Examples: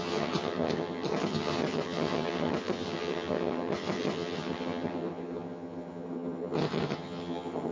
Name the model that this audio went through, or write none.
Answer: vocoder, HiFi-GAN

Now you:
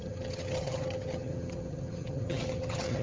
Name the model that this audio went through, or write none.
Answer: vocoder, HiFi-GAN